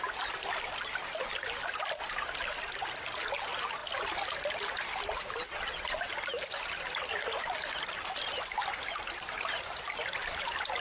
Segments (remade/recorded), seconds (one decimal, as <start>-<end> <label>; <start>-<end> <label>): 0.0-10.8 recorded